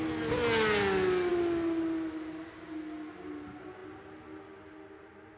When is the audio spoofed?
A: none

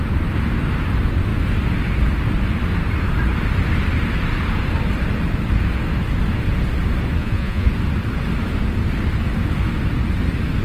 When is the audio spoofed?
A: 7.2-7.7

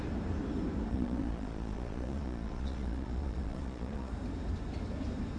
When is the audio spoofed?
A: 0.9-4.1

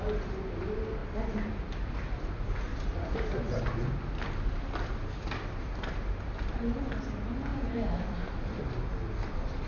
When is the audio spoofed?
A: 2.7-3.6; 7.5-8.7

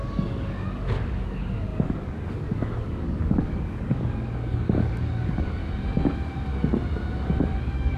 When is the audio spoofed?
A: 0.0-5.6; 7.6-8.0

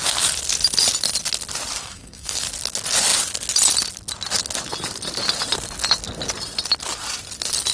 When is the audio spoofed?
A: 1.8-2.4

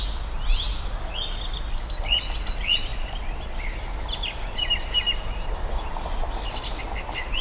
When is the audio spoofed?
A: none